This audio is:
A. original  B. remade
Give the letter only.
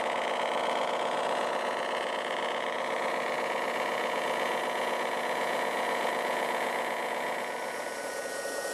B